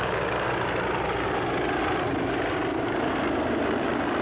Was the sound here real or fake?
real